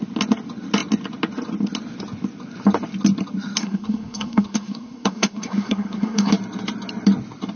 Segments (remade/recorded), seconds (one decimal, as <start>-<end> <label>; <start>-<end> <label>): 0.0-3.6 recorded; 3.6-6.3 remade; 6.3-7.6 recorded